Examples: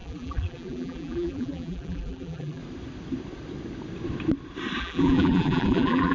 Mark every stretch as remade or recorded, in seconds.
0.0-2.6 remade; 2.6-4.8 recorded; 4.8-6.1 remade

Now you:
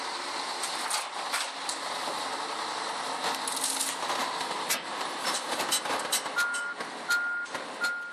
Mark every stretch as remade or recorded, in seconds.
0.0-4.2 recorded; 4.2-5.6 remade; 5.6-8.1 recorded